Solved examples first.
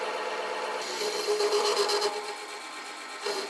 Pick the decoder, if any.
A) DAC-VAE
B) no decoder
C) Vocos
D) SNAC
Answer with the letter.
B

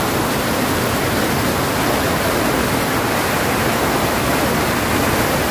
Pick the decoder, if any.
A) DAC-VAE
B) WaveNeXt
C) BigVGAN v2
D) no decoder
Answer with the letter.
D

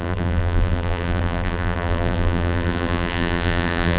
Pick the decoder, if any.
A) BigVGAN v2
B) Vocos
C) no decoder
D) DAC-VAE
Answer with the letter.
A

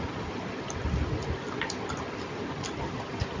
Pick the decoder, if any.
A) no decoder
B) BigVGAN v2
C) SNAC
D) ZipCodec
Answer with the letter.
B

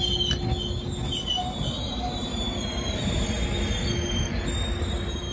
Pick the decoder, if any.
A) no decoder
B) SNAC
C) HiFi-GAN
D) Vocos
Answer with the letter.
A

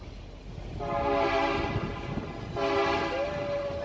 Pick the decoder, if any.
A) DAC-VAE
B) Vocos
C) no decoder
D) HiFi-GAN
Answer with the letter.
C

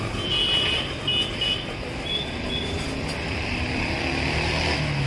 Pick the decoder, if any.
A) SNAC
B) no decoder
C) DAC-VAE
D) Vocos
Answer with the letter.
B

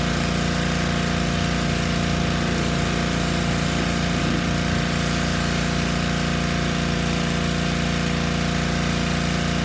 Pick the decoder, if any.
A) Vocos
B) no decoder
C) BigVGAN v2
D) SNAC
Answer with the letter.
B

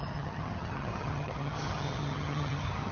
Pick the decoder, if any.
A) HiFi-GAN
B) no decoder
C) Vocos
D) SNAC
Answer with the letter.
A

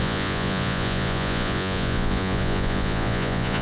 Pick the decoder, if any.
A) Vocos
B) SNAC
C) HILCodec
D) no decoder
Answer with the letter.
A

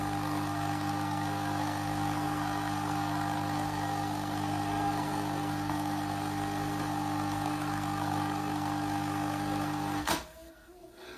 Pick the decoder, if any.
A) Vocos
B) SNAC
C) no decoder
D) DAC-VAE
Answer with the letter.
B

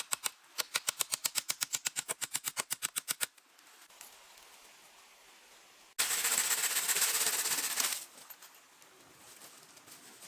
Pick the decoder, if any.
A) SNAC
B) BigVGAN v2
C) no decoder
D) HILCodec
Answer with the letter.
C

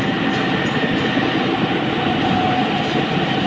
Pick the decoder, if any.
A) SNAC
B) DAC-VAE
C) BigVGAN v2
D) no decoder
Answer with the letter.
D